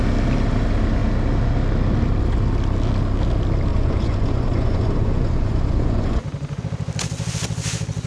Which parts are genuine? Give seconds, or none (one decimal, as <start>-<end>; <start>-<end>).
0.0-3.7; 6.6-8.1